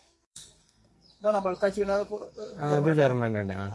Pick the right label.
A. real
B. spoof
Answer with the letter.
B